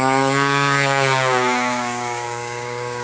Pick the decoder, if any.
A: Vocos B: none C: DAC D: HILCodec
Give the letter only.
C